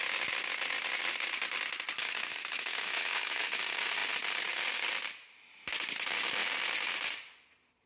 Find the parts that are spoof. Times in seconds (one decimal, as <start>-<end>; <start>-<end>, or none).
2.0-3.6